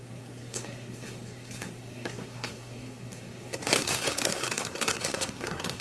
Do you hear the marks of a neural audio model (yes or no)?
yes